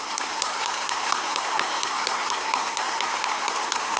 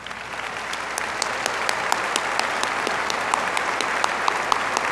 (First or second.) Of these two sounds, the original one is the second